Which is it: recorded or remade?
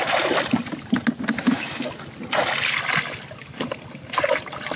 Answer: recorded